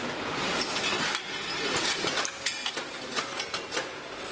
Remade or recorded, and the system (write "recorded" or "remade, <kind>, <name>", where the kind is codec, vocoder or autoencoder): recorded